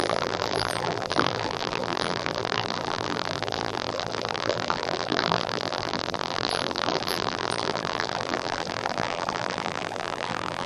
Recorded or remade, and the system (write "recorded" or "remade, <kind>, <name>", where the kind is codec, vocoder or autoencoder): remade, vocoder, BigVGAN v2